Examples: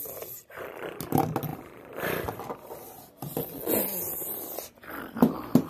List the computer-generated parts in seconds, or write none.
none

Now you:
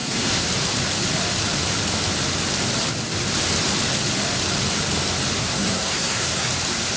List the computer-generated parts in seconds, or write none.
0.0-0.5 (codec, SNAC); 5.4-6.5

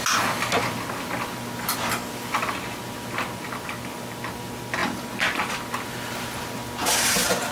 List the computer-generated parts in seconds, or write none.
none

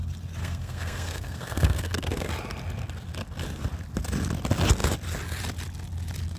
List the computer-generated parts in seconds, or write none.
0.4-2.3 (codec, SNAC)

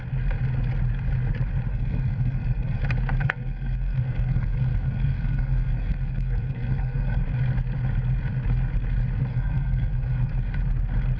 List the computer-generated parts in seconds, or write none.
1.7-2.8 (codec, SNAC); 3.2-7.2; 9.3-10.3

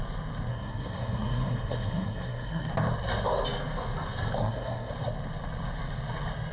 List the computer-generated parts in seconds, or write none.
0.5-2.7 (codec, SNAC); 4.4-4.9